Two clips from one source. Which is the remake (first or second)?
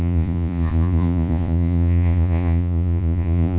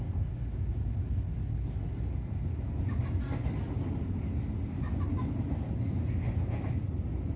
first